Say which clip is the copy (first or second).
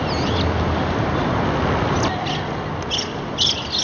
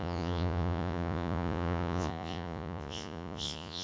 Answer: second